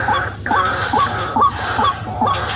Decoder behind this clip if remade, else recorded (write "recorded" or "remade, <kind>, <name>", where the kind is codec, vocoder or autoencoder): recorded